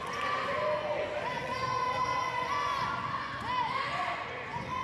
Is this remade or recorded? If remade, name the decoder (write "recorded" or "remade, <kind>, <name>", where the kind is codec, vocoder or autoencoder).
remade, vocoder, Vocos